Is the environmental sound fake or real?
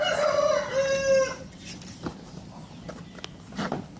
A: real